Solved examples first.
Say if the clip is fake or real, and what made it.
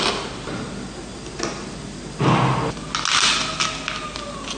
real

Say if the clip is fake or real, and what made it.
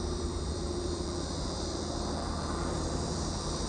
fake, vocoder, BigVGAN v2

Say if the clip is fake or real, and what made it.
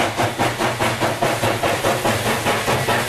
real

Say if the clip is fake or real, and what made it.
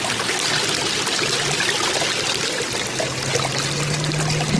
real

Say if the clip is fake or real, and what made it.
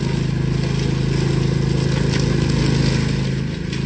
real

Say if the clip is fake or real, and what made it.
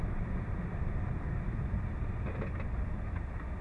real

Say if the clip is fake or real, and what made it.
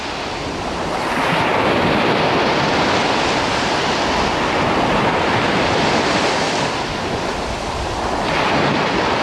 fake, vocoder, BigVGAN v2